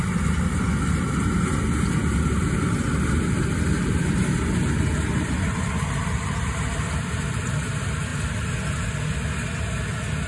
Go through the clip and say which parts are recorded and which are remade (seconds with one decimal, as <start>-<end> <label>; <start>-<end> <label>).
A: 0.0-10.3 recorded